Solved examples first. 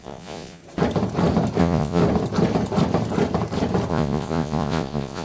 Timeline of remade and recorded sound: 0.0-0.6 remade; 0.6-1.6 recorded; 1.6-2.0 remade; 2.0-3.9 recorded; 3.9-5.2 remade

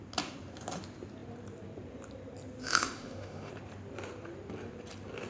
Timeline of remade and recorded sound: 0.0-2.6 recorded; 2.6-3.5 remade; 3.5-5.3 recorded

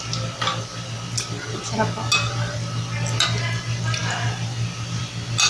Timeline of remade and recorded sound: 0.0-5.5 recorded

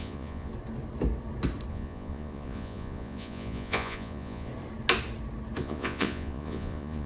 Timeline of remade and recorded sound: 0.0-0.5 remade; 0.5-1.7 recorded; 1.7-4.5 remade; 4.5-5.6 recorded; 5.6-7.1 remade

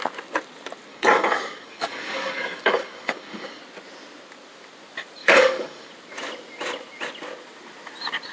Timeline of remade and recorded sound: 0.0-0.9 recorded; 0.9-3.6 remade; 3.6-5.2 recorded; 5.2-5.9 remade; 5.9-8.3 recorded

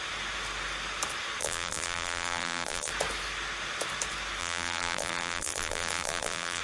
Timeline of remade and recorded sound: 0.0-1.4 recorded; 1.4-2.9 remade; 2.9-4.4 recorded; 4.4-6.6 remade